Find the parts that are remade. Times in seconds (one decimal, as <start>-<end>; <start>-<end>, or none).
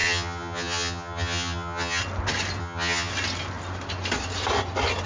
0.0-2.0; 2.6-3.1